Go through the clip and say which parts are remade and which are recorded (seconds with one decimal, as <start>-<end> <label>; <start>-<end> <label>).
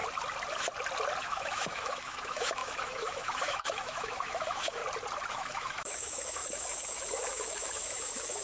0.0-1.2 recorded; 1.2-4.8 remade; 4.8-5.3 recorded; 5.3-8.4 remade